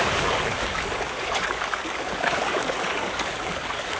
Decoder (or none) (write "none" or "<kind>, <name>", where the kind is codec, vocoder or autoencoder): codec, DAC